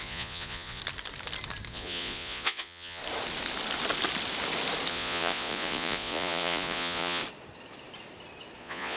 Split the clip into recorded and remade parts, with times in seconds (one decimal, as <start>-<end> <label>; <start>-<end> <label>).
0.0-0.8 remade; 0.8-1.7 recorded; 1.7-3.0 remade; 3.0-4.9 recorded; 4.9-7.2 remade; 7.2-8.6 recorded; 8.6-9.0 remade